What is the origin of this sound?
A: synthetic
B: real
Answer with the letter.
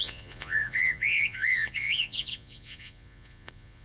A